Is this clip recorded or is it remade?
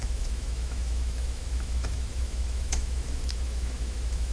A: remade